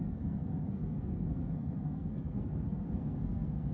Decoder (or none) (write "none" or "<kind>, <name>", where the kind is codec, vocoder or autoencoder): codec, SNAC